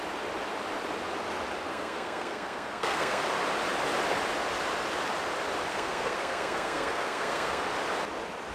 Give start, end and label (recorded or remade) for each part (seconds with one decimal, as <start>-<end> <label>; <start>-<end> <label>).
0.0-1.7 recorded; 1.7-3.2 remade; 3.2-5.7 recorded; 5.7-7.6 remade; 7.6-8.5 recorded